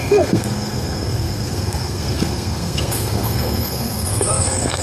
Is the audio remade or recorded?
remade